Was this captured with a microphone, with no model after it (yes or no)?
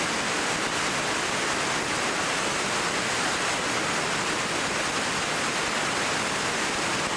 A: yes